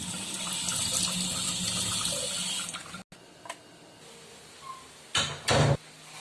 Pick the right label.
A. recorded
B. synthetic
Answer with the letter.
A